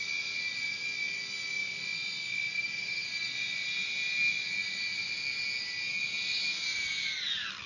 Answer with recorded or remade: recorded